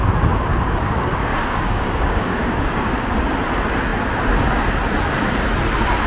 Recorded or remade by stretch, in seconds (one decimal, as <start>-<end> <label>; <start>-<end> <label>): 0.0-0.5 recorded; 0.5-3.0 remade; 3.0-6.1 recorded